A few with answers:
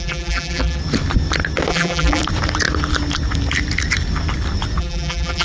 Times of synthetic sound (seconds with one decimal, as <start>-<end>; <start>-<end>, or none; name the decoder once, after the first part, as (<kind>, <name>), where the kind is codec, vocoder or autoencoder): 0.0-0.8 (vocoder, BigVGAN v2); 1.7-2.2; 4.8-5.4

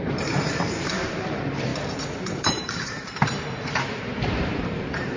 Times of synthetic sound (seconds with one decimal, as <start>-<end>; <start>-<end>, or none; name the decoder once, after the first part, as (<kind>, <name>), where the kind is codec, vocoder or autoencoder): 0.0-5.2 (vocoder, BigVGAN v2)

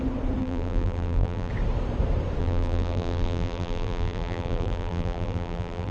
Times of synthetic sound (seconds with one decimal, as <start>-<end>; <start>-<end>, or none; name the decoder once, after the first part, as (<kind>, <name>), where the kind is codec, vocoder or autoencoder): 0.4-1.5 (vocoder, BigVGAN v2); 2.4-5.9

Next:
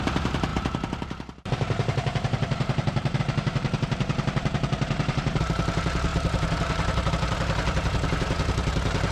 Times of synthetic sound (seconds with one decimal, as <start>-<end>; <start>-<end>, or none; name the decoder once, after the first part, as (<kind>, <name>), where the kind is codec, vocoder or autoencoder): 0.0-9.1 (vocoder, BigVGAN v2)